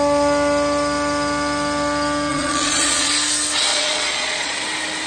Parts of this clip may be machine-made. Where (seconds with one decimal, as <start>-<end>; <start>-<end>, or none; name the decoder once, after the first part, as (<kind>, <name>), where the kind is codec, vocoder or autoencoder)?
2.3-3.1 (vocoder, Vocos); 3.7-4.6